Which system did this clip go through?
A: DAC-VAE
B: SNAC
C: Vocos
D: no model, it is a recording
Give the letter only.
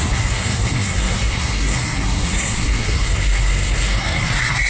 B